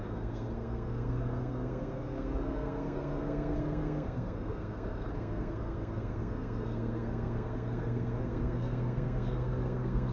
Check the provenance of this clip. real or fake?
fake